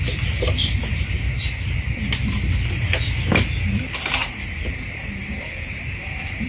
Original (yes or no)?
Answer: yes